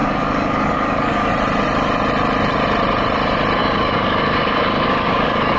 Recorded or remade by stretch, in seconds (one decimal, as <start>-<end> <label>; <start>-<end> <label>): 0.0-1.3 remade; 1.3-3.6 recorded; 3.6-5.6 remade